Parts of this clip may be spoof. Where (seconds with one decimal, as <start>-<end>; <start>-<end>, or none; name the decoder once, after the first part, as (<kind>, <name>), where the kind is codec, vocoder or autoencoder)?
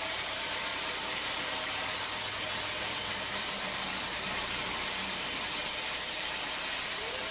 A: 0.0-7.3 (vocoder, BigVGAN v2)